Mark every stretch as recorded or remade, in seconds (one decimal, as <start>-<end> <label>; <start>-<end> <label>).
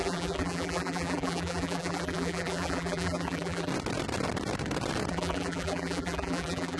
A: 0.0-3.7 remade; 3.7-5.1 recorded; 5.1-6.8 remade